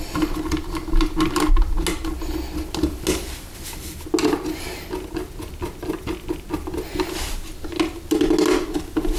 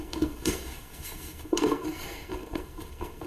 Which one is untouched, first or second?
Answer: first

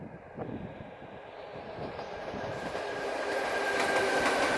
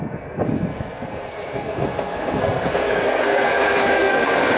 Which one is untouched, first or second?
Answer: first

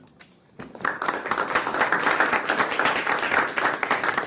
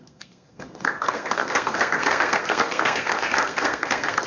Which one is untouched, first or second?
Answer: first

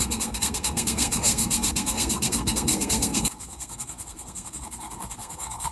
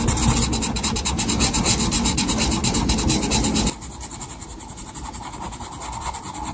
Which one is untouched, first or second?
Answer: second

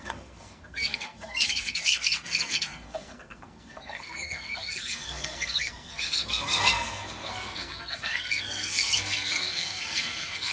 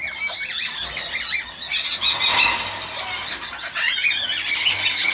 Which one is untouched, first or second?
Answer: second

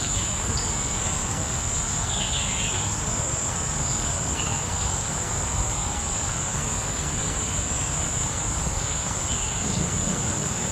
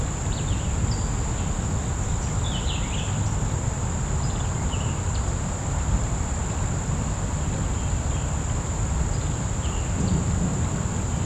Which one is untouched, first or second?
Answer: second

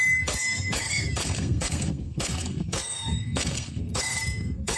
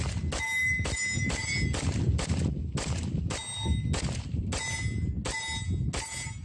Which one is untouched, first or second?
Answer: second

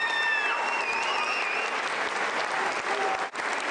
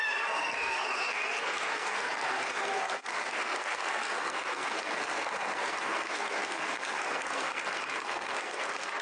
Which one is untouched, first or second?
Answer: first